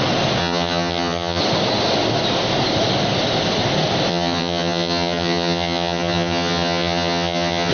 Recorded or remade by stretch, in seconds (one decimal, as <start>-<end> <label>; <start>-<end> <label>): 0.0-0.4 recorded; 0.4-1.4 remade; 1.4-4.1 recorded; 4.1-7.7 remade